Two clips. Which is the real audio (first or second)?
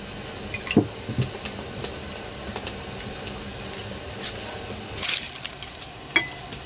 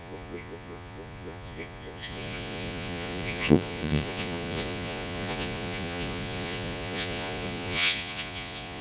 first